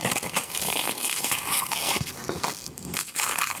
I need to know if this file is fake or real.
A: fake